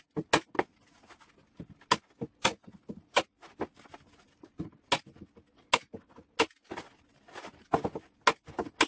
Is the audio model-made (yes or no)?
no